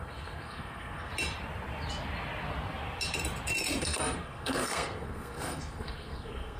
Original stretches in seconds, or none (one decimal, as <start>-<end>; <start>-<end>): 1.1-3.8